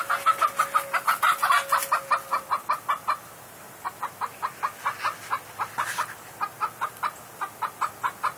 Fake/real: real